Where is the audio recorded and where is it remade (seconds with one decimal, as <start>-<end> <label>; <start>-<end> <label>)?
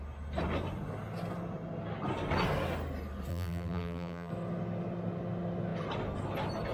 0.0-3.3 recorded; 3.3-4.3 remade; 4.3-6.7 recorded